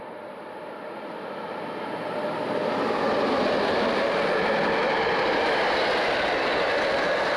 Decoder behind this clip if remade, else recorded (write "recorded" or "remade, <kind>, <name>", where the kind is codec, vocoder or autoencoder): recorded